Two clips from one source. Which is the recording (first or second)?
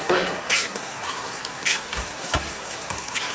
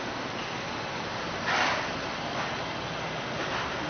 second